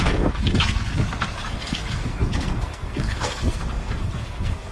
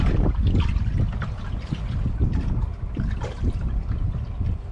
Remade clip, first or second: first